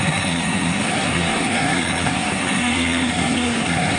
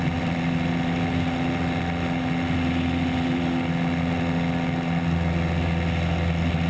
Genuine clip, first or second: second